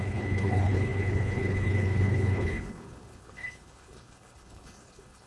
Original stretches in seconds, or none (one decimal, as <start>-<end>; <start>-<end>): none